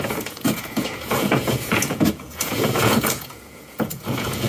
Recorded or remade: remade